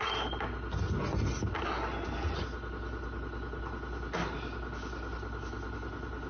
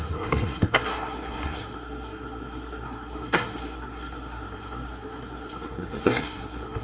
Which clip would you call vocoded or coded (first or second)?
second